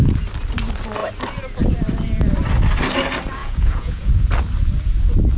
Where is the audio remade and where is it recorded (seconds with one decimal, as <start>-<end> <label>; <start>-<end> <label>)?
0.0-3.4 recorded; 3.4-4.3 remade; 4.3-5.4 recorded